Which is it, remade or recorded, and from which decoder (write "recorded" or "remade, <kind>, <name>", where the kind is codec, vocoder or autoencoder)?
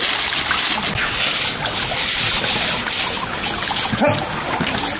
recorded